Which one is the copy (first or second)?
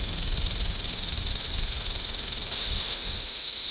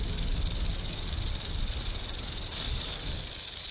first